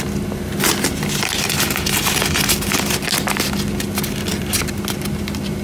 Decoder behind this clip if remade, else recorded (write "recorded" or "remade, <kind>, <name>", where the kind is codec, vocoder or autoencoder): recorded